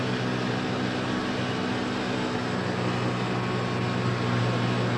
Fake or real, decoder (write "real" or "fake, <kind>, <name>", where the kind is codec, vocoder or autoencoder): real